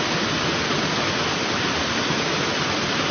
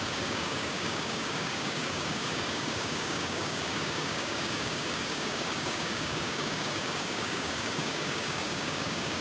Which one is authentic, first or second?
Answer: first